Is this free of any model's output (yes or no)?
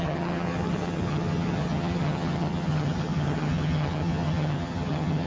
no